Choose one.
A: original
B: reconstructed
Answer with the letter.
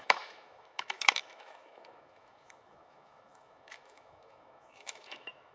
B